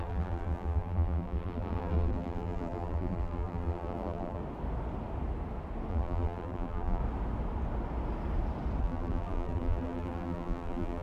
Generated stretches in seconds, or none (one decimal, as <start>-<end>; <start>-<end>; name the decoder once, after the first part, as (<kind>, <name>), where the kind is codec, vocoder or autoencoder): 0.0-4.4 (vocoder, BigVGAN v2); 5.9-7.0; 8.8-11.0